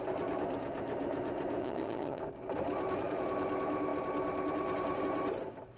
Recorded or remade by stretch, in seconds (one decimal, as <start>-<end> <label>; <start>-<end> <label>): 0.0-1.6 recorded; 1.6-2.2 remade; 2.2-5.8 recorded